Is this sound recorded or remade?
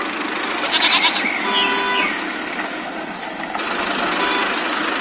recorded